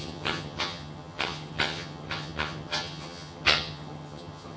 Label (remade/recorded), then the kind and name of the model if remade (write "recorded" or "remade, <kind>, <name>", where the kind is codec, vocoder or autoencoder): remade, vocoder, HiFi-GAN